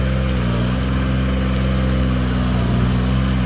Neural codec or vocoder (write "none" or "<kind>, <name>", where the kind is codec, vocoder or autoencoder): none